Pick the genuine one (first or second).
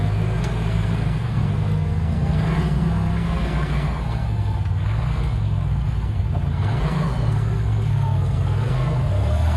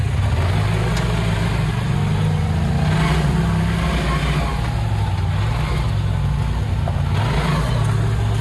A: second